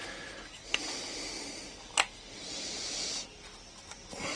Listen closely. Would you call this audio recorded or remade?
recorded